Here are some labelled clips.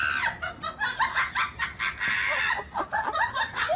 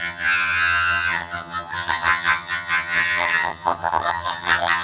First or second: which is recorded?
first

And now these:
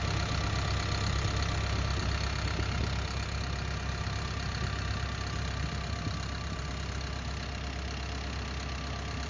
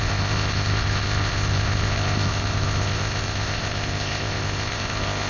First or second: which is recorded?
first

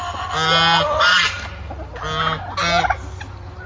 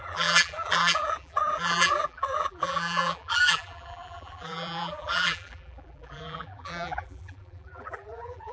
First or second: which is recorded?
first